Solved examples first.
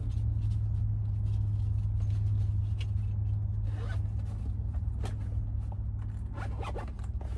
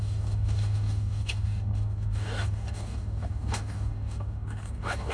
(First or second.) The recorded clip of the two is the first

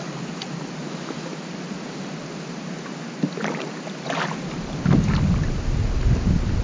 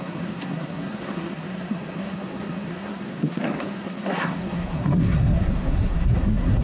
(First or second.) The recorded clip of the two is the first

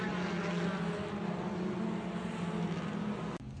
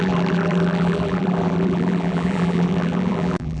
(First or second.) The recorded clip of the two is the first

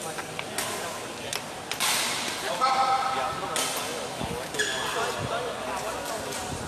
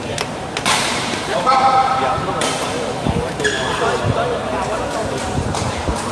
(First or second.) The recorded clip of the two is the first